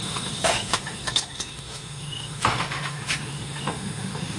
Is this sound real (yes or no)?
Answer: no